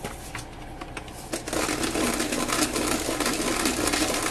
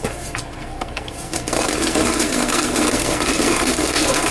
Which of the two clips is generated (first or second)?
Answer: second